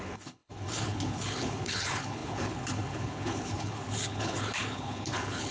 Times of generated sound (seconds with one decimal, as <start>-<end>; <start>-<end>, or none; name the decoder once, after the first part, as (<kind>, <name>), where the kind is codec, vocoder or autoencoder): 0.0-5.5 (codec, HILCodec)